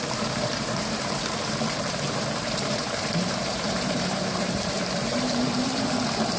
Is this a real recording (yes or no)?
no